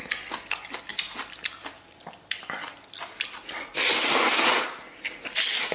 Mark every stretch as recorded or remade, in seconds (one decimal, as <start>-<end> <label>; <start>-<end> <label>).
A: 0.0-5.7 recorded